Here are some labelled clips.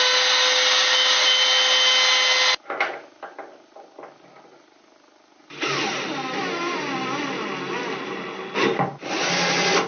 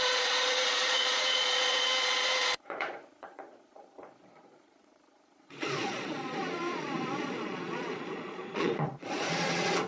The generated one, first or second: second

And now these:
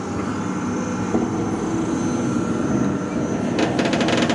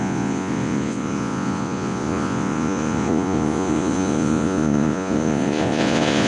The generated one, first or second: second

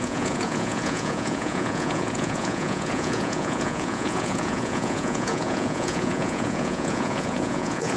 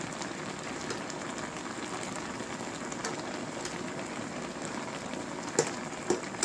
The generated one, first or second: first